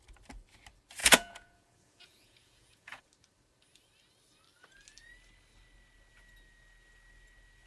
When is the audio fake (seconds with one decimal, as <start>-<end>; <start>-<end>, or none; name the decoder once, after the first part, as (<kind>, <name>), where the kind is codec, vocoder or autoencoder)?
1.0-3.0 (vocoder, Vocos)